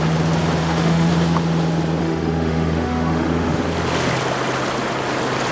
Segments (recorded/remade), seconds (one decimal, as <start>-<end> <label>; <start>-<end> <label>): 0.0-0.6 recorded; 0.6-1.1 remade; 1.1-2.0 recorded; 2.0-3.6 remade; 3.6-5.5 recorded